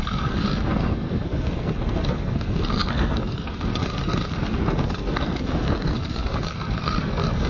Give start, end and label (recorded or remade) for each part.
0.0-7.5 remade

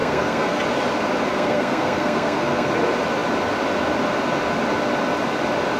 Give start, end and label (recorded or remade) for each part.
0.0-0.6 remade; 0.6-1.3 recorded; 1.3-2.7 remade; 2.7-5.8 recorded

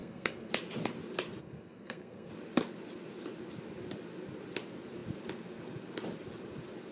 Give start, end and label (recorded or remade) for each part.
0.0-0.5 remade; 0.5-1.4 recorded; 1.4-2.3 remade; 2.3-6.9 recorded

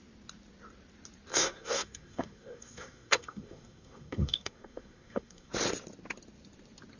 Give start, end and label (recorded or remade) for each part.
0.0-1.3 recorded; 1.3-5.5 remade; 5.5-7.0 recorded

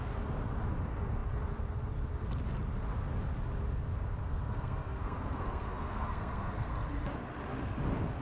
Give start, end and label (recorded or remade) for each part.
0.0-4.2 recorded; 4.2-6.7 remade; 6.7-8.2 recorded

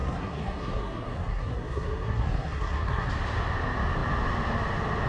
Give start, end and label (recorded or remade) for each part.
0.0-3.1 remade; 3.1-5.1 recorded

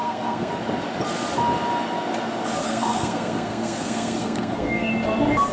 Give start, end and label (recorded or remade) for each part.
0.0-0.5 remade; 0.5-2.6 recorded; 2.6-4.9 remade; 4.9-5.5 recorded